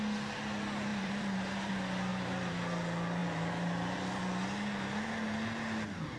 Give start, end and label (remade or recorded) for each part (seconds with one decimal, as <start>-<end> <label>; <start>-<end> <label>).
0.0-0.9 recorded; 0.9-1.7 remade; 1.7-2.1 recorded; 2.1-2.6 remade; 2.6-3.2 recorded; 3.2-4.2 remade; 4.2-6.2 recorded